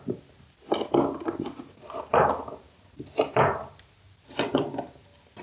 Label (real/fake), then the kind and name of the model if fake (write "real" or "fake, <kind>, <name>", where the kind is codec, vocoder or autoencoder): real